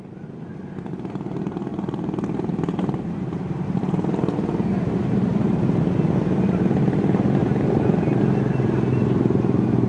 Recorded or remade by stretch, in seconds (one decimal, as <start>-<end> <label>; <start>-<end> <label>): 0.0-1.7 recorded; 1.7-5.6 remade; 5.6-7.4 recorded; 7.4-8.2 remade; 8.2-9.9 recorded

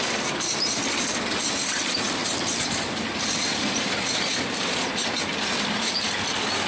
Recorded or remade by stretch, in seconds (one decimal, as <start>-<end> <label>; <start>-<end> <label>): 0.0-6.7 remade

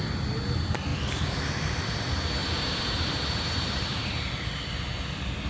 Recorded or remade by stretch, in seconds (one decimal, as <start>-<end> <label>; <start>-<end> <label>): 0.0-0.9 recorded; 0.9-1.5 remade; 1.5-2.4 recorded; 2.4-4.3 remade; 4.3-5.5 recorded

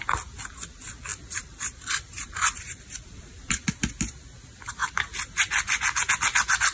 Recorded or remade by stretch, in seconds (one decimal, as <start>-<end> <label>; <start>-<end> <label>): 0.0-1.1 recorded; 1.1-3.7 remade; 3.7-6.7 recorded

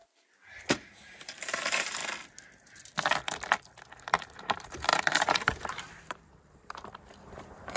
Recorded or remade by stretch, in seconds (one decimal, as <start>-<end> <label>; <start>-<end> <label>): 0.0-0.7 recorded; 0.7-2.0 remade; 2.0-4.5 recorded; 4.5-7.8 remade

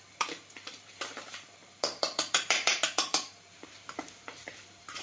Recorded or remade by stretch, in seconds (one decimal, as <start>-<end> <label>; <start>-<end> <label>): 0.0-5.0 remade